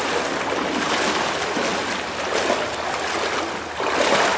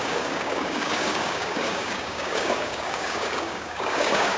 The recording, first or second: first